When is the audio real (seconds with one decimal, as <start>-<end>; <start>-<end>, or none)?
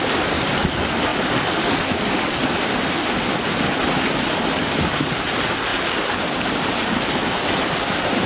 0.0-8.3